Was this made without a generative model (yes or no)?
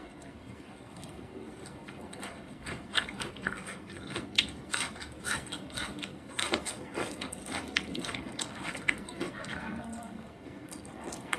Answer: no